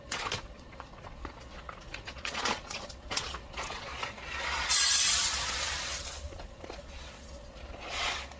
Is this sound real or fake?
fake